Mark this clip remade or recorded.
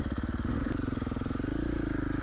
recorded